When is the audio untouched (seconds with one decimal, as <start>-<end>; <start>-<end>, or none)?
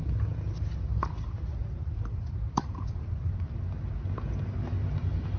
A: 0.0-1.6; 3.2-5.4